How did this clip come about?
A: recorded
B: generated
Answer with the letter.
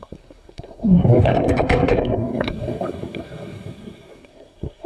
B